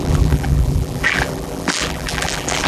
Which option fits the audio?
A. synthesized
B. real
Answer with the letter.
A